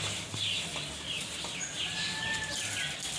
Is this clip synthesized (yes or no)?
no